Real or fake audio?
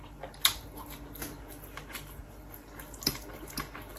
real